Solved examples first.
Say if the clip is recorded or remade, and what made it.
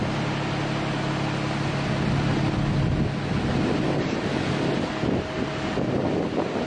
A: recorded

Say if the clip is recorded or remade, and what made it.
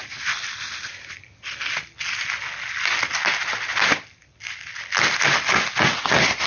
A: recorded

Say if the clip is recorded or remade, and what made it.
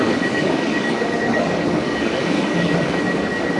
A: remade, codec, DAC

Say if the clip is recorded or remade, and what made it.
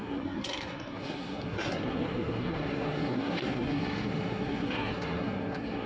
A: remade, codec, SNAC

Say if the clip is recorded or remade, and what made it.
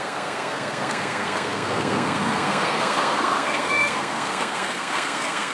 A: remade, codec, SNAC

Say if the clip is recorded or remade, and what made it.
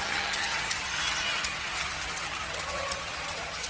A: remade, vocoder, HiFi-GAN